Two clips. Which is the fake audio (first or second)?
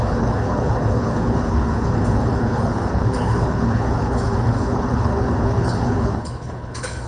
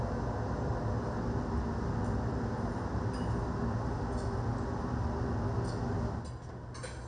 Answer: first